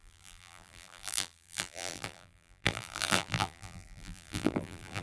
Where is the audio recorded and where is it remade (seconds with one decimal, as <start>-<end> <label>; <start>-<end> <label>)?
0.0-5.0 remade